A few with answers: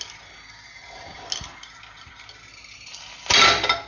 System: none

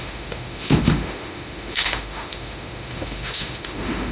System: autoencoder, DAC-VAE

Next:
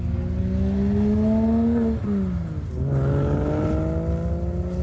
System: none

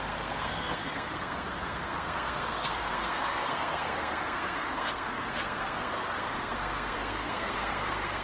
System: codec, SNAC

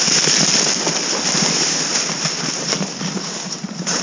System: none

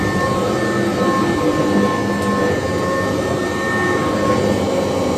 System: none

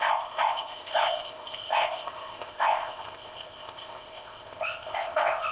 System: codec, ZipCodec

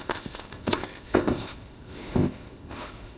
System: codec, ZipCodec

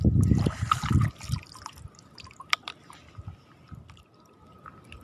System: none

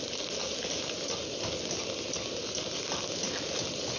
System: none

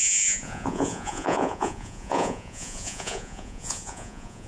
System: vocoder, Vocos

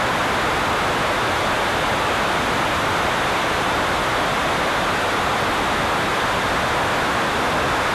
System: none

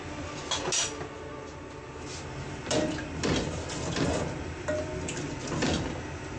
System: none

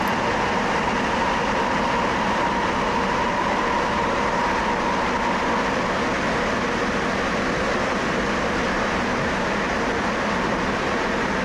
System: none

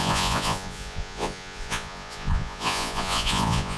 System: vocoder, Vocos